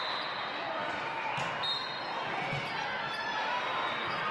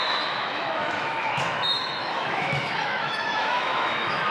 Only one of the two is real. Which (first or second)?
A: first